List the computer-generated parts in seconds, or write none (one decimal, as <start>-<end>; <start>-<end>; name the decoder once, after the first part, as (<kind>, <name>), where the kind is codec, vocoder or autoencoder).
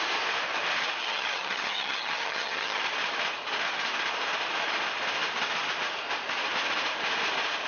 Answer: 1.0-2.8 (vocoder, HiFi-GAN)